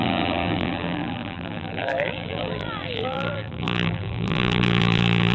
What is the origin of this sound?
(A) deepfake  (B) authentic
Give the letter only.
A